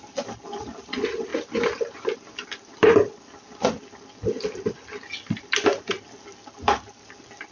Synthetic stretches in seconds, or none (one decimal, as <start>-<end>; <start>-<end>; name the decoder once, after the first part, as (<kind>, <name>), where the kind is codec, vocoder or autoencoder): none